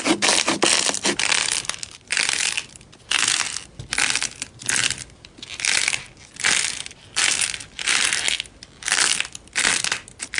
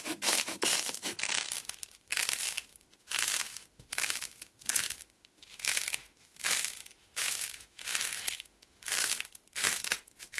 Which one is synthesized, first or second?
second